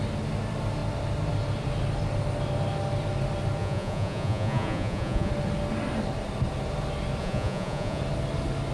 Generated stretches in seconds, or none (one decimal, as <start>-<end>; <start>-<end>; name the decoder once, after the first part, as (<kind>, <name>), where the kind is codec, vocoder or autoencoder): 3.6-5.3 (vocoder, Vocos); 7.2-8.0